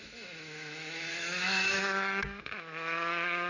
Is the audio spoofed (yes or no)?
yes